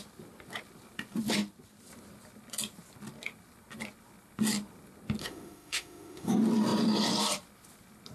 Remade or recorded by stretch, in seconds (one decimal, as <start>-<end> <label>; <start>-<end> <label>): 0.0-5.2 recorded; 5.2-6.3 remade; 6.3-8.1 recorded